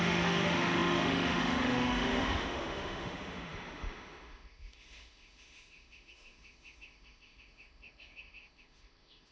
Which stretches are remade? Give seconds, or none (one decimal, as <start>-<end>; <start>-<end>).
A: 0.0-9.3